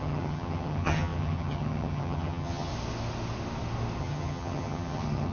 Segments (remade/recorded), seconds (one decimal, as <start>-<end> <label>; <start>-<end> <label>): 0.0-2.7 remade; 2.7-4.0 recorded; 4.0-5.3 remade